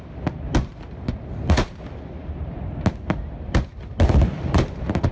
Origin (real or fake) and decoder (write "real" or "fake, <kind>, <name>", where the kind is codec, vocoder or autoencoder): real